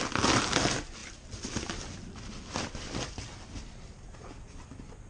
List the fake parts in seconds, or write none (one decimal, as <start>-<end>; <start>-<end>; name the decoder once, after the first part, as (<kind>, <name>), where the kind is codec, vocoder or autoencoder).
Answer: none